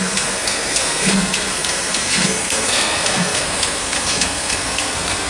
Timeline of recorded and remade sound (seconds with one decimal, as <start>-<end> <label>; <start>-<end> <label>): 0.0-5.3 remade